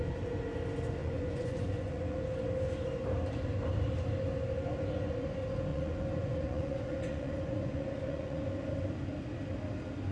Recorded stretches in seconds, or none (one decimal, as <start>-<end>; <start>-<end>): 0.0-1.0; 2.2-5.7; 8.4-10.1